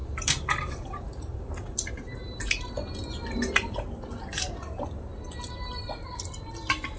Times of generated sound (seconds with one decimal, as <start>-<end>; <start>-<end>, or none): 0.0-2.7